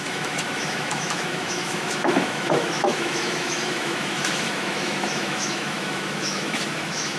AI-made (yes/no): yes